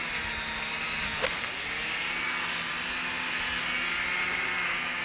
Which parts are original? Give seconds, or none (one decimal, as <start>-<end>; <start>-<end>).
0.0-5.0